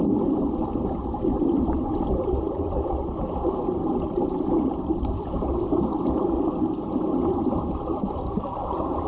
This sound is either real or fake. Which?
real